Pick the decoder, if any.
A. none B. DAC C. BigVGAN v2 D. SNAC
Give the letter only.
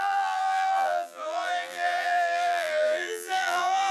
C